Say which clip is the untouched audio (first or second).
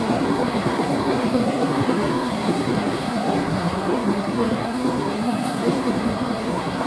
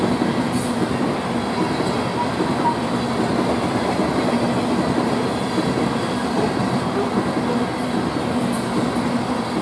second